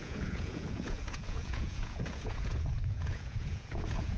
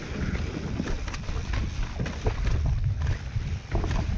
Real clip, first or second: second